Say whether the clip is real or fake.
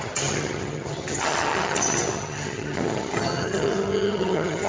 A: fake